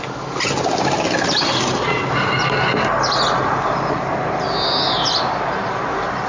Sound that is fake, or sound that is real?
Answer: real